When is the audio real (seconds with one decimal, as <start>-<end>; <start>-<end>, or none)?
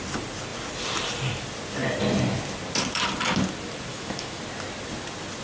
0.0-3.9; 4.4-5.4